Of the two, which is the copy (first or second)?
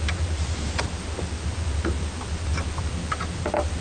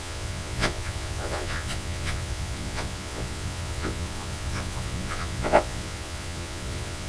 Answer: second